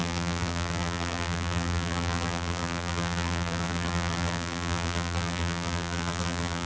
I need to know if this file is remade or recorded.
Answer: remade